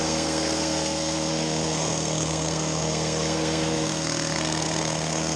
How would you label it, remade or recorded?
remade